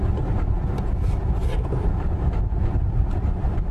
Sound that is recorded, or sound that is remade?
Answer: recorded